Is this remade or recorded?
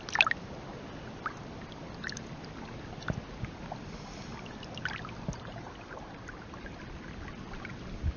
recorded